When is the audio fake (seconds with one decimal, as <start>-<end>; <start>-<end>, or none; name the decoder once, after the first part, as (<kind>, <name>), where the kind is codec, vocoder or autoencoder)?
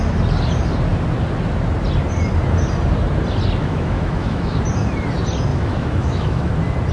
3.6-4.6 (autoencoder, DAC-VAE); 5.5-6.5